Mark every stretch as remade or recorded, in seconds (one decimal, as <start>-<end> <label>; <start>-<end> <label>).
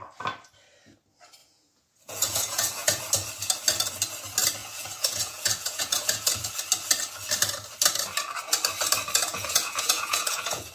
0.0-1.4 recorded; 1.4-3.0 remade; 3.0-4.6 recorded; 4.6-6.5 remade; 6.5-9.3 recorded; 9.3-10.7 remade